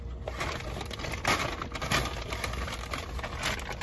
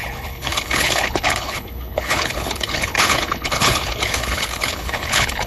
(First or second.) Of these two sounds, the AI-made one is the second